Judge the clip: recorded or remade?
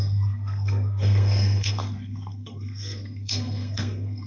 remade